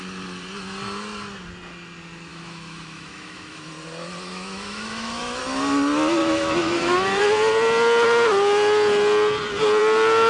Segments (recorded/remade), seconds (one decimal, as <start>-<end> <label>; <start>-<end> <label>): 0.0-2.3 recorded; 2.3-3.7 remade; 3.7-4.3 recorded; 4.3-5.4 remade; 5.4-6.2 recorded; 6.2-7.2 remade; 7.2-10.3 recorded